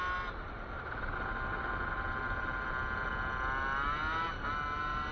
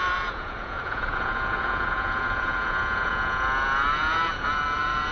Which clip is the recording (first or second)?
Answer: first